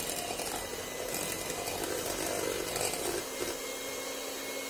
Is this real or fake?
real